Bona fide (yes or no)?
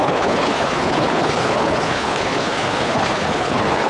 no